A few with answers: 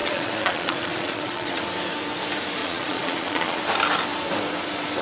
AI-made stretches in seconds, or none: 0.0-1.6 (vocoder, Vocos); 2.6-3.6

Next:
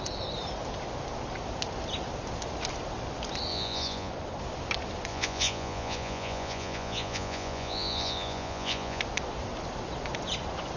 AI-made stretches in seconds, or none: 3.5-4.1 (vocoder, Vocos); 5.1-9.0